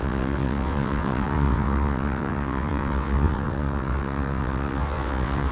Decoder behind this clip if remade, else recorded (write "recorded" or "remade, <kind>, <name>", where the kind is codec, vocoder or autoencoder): remade, vocoder, WaveNeXt